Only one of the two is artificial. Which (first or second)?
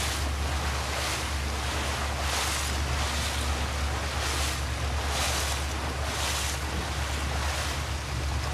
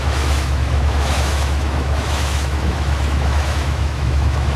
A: second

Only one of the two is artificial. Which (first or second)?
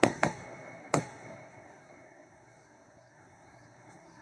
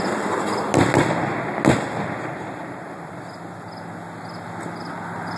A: first